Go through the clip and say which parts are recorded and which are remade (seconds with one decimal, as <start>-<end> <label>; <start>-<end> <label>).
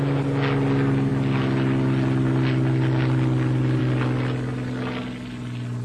0.0-5.8 recorded